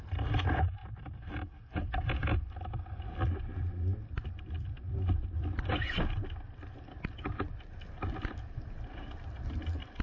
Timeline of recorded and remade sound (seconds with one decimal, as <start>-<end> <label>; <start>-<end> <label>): 0.0-10.0 recorded